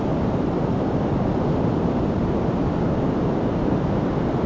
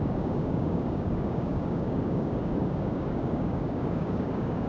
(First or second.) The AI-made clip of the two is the second